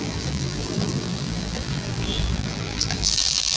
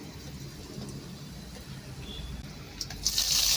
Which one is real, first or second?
second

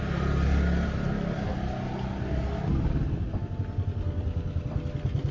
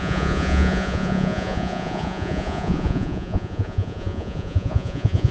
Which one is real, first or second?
first